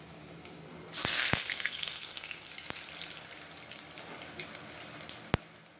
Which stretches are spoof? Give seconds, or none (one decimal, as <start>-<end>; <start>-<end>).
1.1-2.5